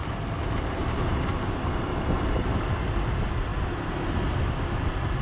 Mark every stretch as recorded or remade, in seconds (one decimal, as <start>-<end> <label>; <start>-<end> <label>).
0.0-3.1 remade; 3.1-5.2 recorded

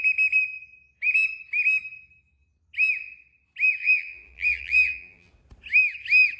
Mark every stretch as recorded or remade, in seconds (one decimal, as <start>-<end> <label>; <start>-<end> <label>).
0.0-3.8 recorded; 3.8-5.3 remade; 5.3-6.4 recorded

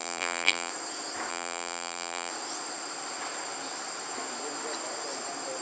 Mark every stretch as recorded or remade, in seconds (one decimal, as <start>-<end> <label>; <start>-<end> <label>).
0.0-0.7 remade; 0.7-1.3 recorded; 1.3-2.3 remade; 2.3-5.6 recorded

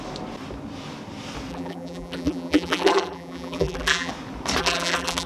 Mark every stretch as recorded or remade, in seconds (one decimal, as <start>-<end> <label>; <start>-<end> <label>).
0.0-1.5 recorded; 1.5-4.1 remade; 4.1-4.6 recorded; 4.6-5.3 remade

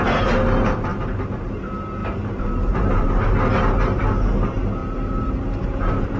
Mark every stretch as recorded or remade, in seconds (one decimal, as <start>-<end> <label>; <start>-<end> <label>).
0.0-0.9 recorded; 0.9-1.6 remade; 1.6-2.0 recorded; 2.0-3.2 remade; 3.2-4.8 recorded; 4.8-6.2 remade

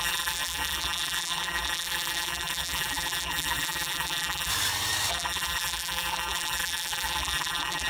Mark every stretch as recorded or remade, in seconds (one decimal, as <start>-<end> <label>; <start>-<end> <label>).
0.0-4.5 remade; 4.5-5.1 recorded; 5.1-7.9 remade